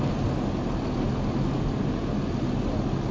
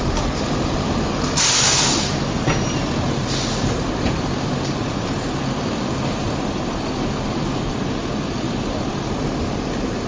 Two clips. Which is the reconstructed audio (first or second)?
second